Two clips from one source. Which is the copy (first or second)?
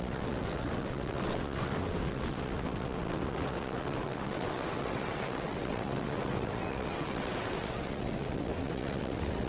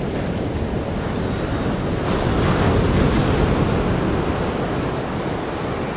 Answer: first